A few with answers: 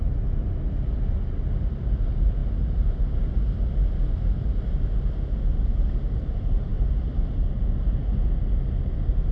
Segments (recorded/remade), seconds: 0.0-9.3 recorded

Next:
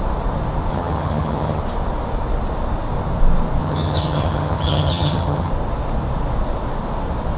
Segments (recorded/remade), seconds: 0.0-0.7 recorded; 0.7-1.6 remade; 1.6-3.6 recorded; 3.6-5.5 remade; 5.5-7.4 recorded

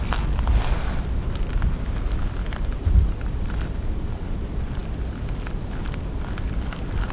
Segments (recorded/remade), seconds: 0.0-2.8 recorded; 2.8-4.2 remade; 4.2-7.1 recorded

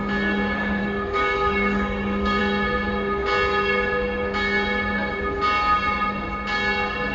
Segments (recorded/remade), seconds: 0.0-0.8 recorded; 0.8-2.4 remade; 2.4-7.1 recorded

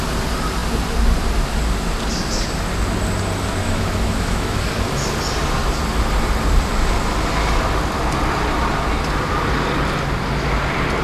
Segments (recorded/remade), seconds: 0.0-3.6 recorded; 3.6-4.6 remade; 4.6-11.0 recorded